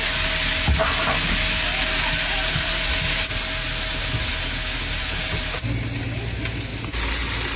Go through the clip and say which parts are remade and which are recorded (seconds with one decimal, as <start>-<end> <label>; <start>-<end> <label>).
0.0-7.6 recorded